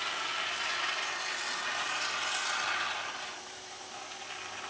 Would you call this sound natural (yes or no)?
yes